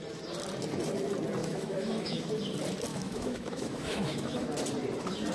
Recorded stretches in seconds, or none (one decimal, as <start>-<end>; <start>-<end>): 0.0-1.4; 2.2-2.9; 4.5-5.3